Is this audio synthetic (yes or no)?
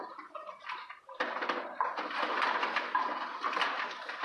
no